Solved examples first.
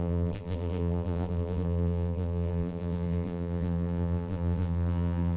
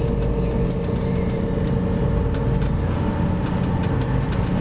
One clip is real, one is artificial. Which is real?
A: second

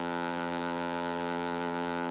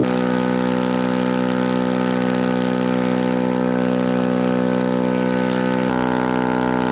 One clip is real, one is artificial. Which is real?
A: second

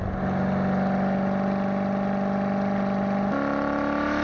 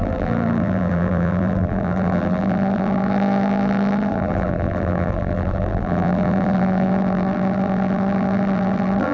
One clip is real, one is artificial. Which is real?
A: first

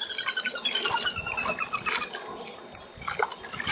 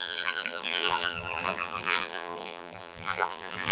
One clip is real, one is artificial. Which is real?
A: first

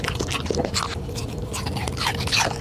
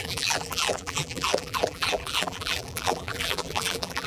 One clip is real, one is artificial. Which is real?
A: first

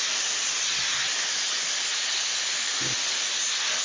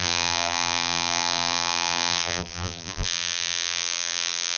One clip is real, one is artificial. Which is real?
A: first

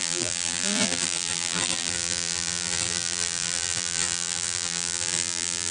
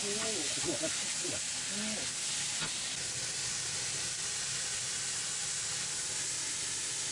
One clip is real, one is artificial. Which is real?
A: second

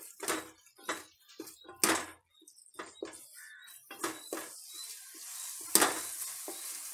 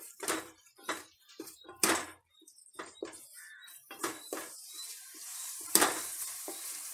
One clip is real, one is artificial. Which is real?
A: first